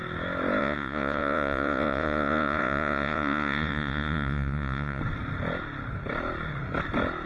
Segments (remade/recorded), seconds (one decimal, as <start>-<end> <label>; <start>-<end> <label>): 0.0-0.6 recorded; 0.6-5.0 remade; 5.0-7.3 recorded